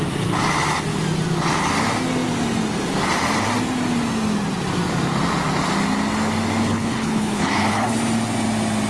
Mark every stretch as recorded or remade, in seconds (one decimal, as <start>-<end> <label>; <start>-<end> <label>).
0.0-6.6 recorded; 6.6-8.0 remade; 8.0-8.9 recorded

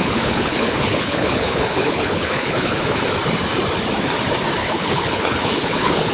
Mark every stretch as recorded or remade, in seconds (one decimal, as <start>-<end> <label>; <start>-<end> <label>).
0.0-3.0 remade; 3.0-4.6 recorded; 4.6-6.1 remade